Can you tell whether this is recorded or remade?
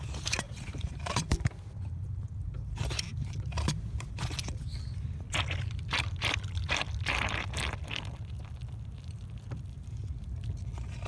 remade